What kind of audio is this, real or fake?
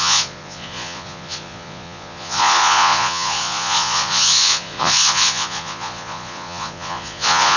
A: fake